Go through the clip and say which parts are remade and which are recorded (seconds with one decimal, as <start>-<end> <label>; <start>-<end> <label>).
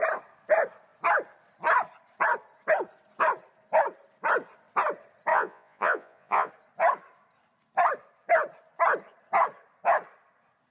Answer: 0.0-5.3 recorded; 5.3-6.5 remade; 6.5-10.7 recorded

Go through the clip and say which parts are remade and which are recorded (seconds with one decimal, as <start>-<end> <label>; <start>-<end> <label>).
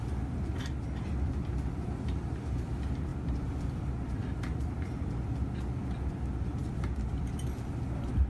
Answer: 0.0-8.3 recorded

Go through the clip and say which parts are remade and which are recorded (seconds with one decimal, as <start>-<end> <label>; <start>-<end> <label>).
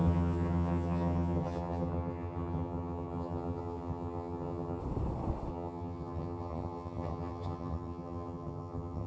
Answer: 0.0-4.8 remade; 4.8-5.5 recorded; 5.5-9.1 remade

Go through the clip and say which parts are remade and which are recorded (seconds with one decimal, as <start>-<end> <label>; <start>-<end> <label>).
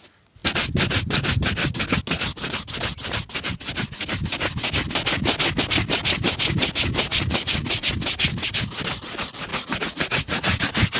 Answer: 0.0-7.0 recorded; 7.0-7.9 remade; 7.9-9.5 recorded; 9.5-10.6 remade; 10.6-11.0 recorded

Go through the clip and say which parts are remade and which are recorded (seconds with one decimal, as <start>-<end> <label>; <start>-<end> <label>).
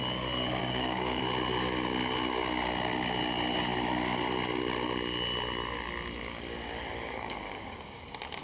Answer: 0.0-0.6 recorded; 0.6-1.2 remade; 1.2-7.0 recorded; 7.0-8.0 remade; 8.0-8.4 recorded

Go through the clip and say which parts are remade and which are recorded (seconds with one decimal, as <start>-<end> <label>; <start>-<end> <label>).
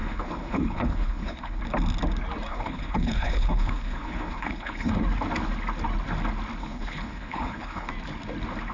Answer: 0.0-1.6 remade; 1.6-2.5 recorded; 2.5-4.9 remade; 4.9-6.6 recorded; 6.6-7.9 remade; 7.9-8.7 recorded